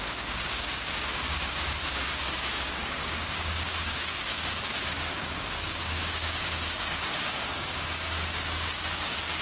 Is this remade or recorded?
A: remade